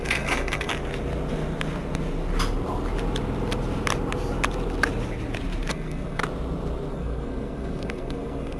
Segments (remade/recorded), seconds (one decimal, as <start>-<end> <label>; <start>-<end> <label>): 0.0-0.7 remade; 0.7-5.7 recorded; 5.7-6.2 remade; 6.2-6.9 recorded; 6.9-8.6 remade

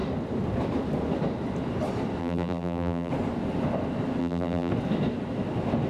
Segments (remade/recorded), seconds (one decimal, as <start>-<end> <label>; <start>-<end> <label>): 0.0-2.2 recorded; 2.2-3.1 remade; 3.1-4.2 recorded; 4.2-4.7 remade; 4.7-5.9 recorded

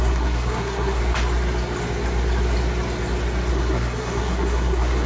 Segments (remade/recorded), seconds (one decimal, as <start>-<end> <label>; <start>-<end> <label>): 0.0-1.0 remade; 1.0-3.5 recorded; 3.5-5.1 remade

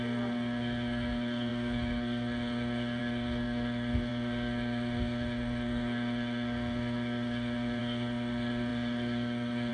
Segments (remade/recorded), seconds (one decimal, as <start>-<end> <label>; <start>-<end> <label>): 0.0-9.7 remade

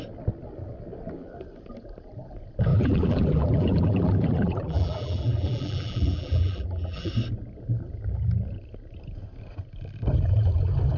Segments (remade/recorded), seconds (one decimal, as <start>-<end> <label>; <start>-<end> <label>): 0.0-2.7 recorded; 2.7-7.1 remade; 7.1-11.0 recorded

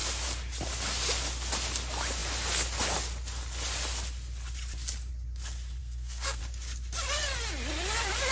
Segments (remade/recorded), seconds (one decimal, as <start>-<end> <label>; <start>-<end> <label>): 0.0-5.8 recorded; 5.8-6.4 remade; 6.4-8.3 recorded